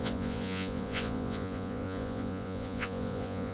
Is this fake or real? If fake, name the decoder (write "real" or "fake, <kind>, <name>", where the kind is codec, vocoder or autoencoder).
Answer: fake, vocoder, Vocos